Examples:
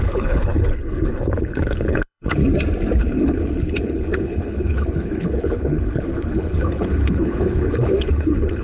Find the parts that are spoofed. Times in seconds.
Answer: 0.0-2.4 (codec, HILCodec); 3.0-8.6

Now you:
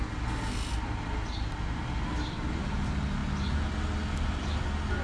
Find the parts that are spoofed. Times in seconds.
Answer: none